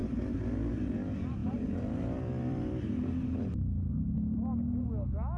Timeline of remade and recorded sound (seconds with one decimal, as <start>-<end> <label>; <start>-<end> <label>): 0.0-0.7 remade; 0.7-1.4 recorded; 1.4-4.6 remade; 4.6-5.4 recorded